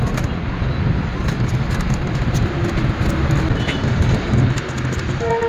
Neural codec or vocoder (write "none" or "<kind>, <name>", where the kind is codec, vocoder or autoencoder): none